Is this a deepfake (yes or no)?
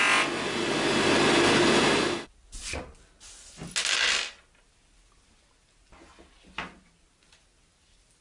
no